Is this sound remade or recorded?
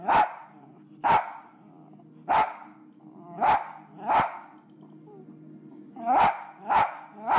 recorded